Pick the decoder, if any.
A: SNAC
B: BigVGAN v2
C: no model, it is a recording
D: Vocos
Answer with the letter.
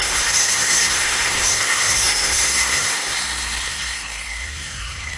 A